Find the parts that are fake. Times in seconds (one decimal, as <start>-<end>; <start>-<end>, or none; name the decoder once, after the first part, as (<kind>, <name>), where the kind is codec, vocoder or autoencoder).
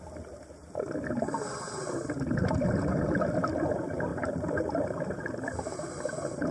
4.1-6.5 (vocoder, BigVGAN v2)